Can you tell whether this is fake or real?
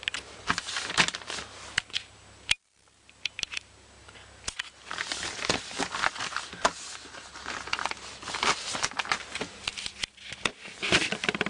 real